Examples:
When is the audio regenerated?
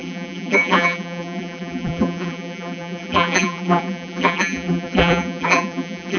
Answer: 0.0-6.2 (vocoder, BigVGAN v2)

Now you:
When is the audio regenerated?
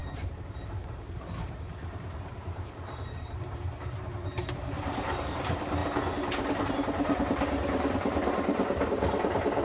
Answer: 0.0-5.8 (vocoder, BigVGAN v2); 6.7-9.6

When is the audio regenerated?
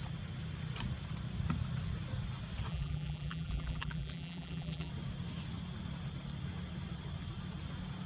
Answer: 2.7-4.9 (vocoder, BigVGAN v2)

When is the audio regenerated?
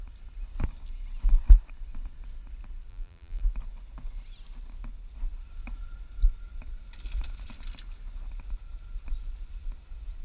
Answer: 2.9-3.4 (vocoder, BigVGAN v2)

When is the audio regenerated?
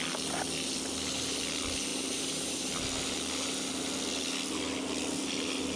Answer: 1.9-2.7 (vocoder, BigVGAN v2)